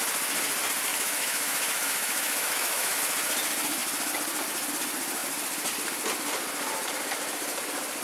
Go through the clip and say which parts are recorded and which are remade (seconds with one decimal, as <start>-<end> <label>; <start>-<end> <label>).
0.0-0.9 recorded; 0.9-3.0 remade; 3.0-8.0 recorded